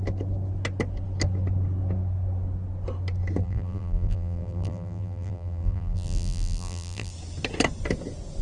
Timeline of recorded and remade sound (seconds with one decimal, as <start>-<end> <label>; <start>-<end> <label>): 0.0-3.4 recorded; 3.4-7.1 remade; 7.1-8.4 recorded